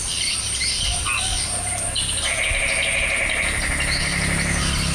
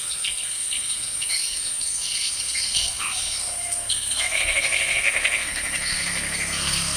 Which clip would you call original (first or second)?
first